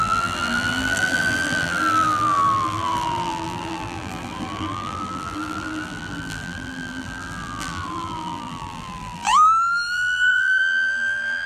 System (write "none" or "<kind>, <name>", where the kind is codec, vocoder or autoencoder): vocoder, BigVGAN v2